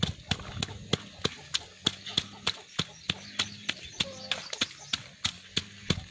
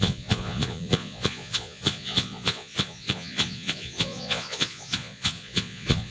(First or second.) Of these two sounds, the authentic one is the first